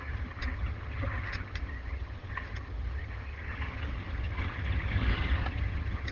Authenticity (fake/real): fake